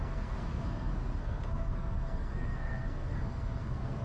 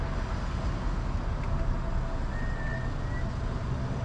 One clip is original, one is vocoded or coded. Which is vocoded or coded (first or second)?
first